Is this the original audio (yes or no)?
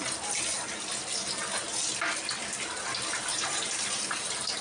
yes